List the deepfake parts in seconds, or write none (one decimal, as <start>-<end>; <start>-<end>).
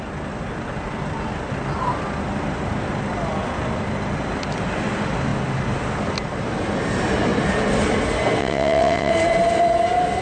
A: 8.4-9.1